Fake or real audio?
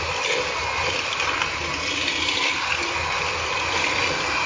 real